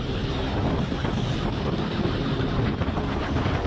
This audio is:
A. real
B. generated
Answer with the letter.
A